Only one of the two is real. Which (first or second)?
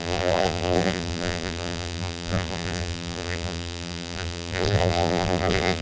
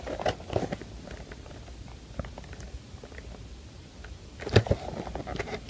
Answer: second